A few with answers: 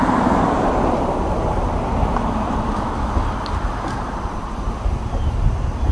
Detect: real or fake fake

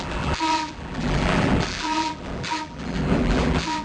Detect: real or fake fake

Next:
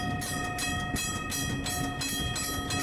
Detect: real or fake real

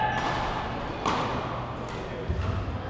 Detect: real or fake real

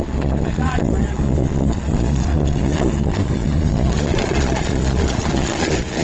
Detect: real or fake fake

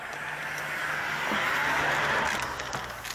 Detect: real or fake real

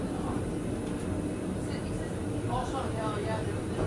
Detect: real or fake real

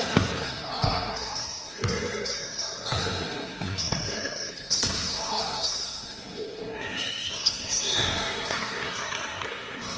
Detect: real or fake fake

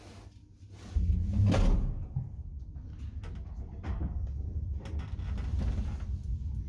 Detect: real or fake real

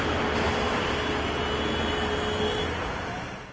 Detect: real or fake real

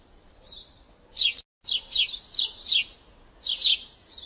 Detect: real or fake real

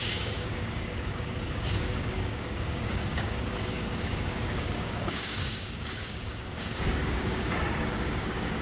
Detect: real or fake fake